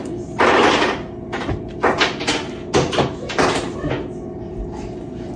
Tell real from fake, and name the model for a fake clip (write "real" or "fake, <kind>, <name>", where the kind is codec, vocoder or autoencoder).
real